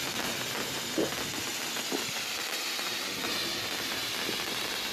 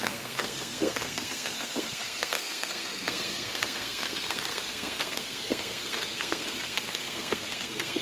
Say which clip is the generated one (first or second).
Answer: second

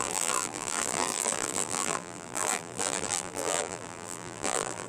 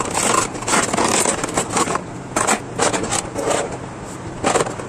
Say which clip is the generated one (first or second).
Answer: first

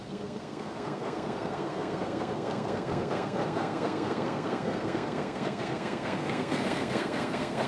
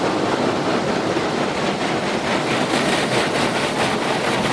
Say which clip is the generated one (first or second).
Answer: first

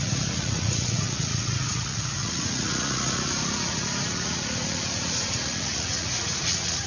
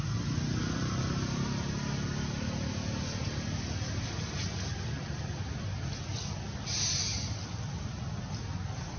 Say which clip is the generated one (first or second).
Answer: first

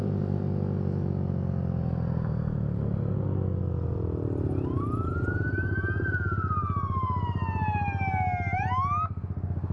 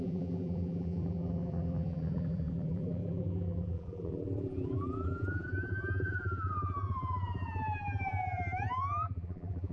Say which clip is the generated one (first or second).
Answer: second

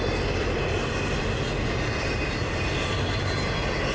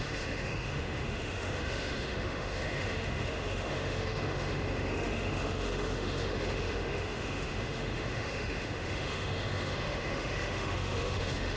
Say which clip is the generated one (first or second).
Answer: second